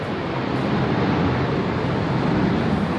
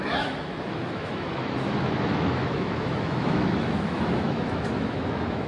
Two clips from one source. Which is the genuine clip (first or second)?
first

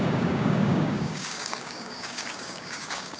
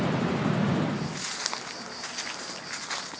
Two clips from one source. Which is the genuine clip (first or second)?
second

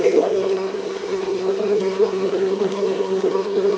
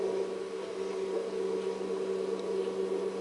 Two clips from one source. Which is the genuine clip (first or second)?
second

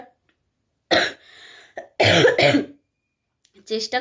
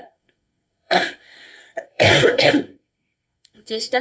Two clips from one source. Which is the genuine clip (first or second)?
first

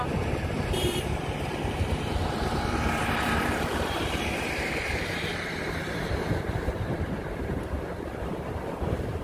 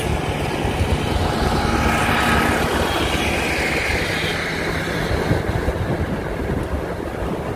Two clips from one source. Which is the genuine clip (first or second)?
second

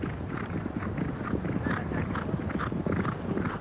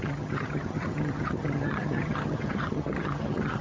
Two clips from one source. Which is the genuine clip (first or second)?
first